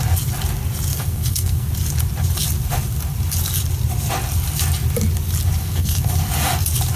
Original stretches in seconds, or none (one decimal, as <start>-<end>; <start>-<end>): 0.0-0.9; 1.7-5.6; 6.1-7.0